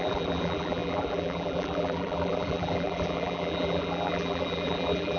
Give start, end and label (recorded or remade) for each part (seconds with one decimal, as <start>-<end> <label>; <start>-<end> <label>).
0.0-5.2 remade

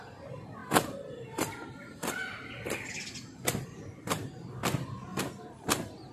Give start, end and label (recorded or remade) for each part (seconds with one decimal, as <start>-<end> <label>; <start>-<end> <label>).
0.0-0.6 recorded; 0.6-4.3 remade; 4.3-5.1 recorded; 5.1-6.1 remade

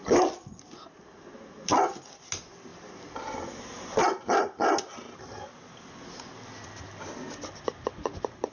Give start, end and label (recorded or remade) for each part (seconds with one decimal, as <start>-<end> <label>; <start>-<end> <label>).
0.0-2.7 recorded; 2.7-4.4 remade; 4.4-8.5 recorded

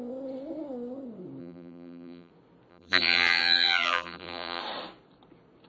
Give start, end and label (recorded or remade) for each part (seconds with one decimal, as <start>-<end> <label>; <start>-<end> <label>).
0.0-1.4 recorded; 1.4-2.3 remade; 2.3-2.7 recorded; 2.7-4.6 remade; 4.6-5.7 recorded

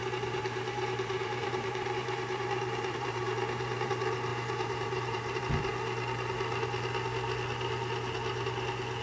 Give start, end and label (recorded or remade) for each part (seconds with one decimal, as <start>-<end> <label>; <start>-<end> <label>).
0.0-3.9 remade; 3.9-4.3 recorded; 4.3-5.4 remade; 5.4-9.0 recorded

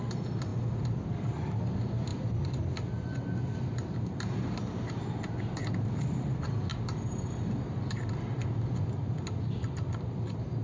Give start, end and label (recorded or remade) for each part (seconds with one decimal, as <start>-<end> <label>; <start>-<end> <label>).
0.0-2.1 recorded; 2.1-2.6 remade; 2.6-10.6 recorded

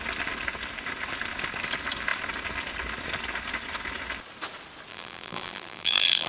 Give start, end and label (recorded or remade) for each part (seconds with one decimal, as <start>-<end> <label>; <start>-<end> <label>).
0.0-4.9 recorded; 4.9-6.3 remade

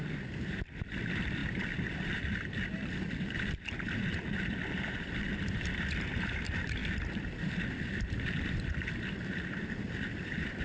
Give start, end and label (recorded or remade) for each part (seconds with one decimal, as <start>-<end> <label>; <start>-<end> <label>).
0.0-10.6 remade